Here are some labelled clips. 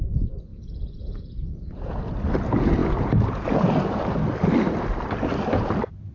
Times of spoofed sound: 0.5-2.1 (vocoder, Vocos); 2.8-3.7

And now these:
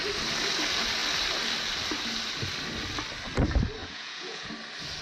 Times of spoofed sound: 3.8-4.5 (vocoder, Vocos)